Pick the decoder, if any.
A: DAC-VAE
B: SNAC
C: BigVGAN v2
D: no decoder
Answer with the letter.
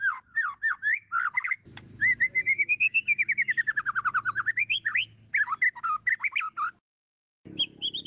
D